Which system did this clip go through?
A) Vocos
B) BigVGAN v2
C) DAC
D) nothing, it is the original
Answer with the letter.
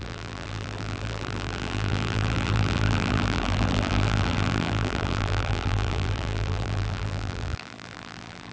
B